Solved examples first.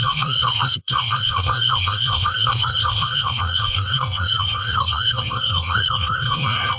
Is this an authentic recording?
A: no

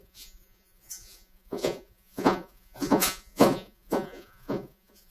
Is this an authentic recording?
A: no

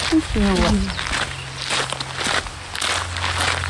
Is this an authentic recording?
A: yes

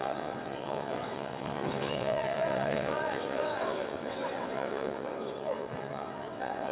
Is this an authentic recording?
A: no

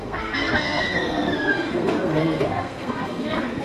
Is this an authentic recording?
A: no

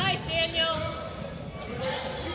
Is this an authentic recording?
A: yes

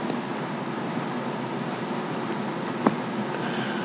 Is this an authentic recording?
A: yes